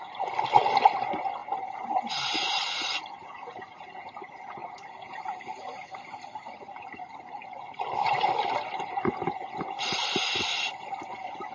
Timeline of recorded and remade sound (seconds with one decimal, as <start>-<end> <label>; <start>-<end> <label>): 0.0-11.5 recorded